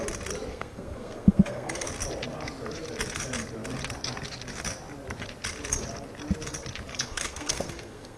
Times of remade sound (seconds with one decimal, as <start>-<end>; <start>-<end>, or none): 0.5-1.9; 6.9-8.2